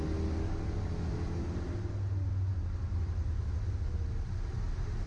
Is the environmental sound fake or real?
real